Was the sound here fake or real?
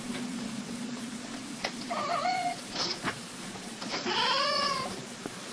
fake